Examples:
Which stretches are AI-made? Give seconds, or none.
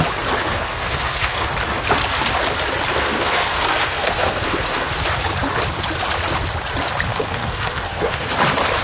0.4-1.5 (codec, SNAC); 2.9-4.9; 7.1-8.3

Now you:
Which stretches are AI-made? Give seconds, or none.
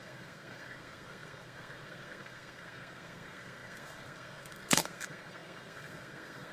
0.0-6.5 (codec, SNAC)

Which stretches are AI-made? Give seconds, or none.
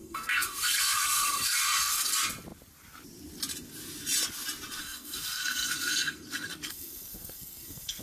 0.0-2.1 (codec, SNAC); 4.8-8.0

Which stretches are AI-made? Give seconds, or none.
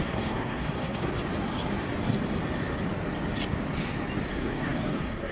0.0-1.1 (codec, SNAC); 4.3-5.3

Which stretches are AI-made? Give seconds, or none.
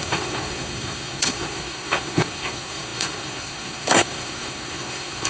0.0-5.3 (codec, SNAC)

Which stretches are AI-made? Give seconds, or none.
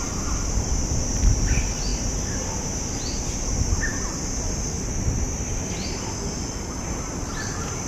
none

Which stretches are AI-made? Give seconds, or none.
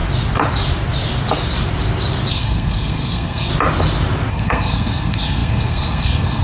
2.3-3.5 (codec, SNAC); 4.3-6.4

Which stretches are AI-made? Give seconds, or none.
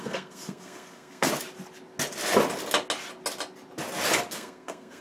0.0-1.3 (codec, SNAC); 4.3-5.0